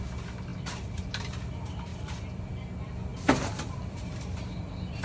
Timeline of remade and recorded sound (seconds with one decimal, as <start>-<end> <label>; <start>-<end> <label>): 0.0-0.5 recorded; 0.5-1.5 remade; 1.5-1.9 recorded; 1.9-2.4 remade; 2.4-3.1 recorded; 3.1-5.0 remade